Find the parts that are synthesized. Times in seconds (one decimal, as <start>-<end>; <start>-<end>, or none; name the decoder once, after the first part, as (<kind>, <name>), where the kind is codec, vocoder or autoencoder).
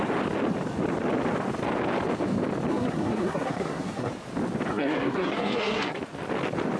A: 2.7-4.1 (codec, SNAC); 4.7-6.0